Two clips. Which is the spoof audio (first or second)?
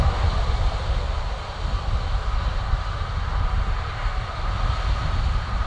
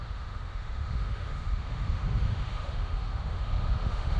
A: second